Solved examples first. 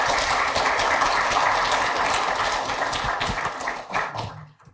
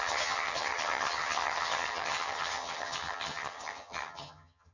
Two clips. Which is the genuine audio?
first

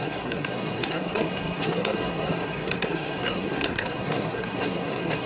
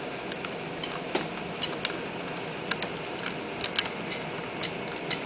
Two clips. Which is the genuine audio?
second